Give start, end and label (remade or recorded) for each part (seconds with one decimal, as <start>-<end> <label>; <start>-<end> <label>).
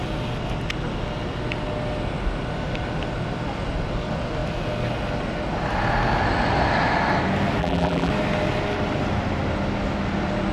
0.0-7.6 recorded; 7.6-8.1 remade; 8.1-10.5 recorded